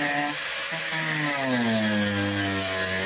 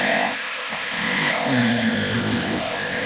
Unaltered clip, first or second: first